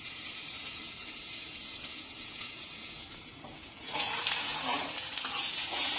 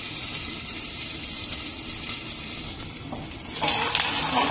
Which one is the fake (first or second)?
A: first